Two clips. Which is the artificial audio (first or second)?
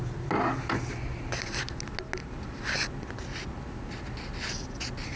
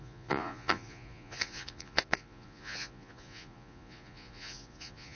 second